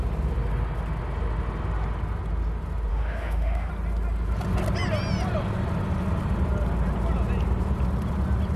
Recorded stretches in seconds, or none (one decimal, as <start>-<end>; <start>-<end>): 0.0-2.9; 3.7-8.6